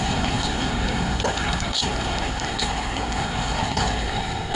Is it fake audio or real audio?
fake